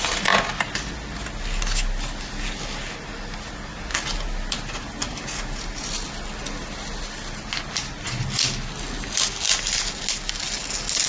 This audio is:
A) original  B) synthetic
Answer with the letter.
A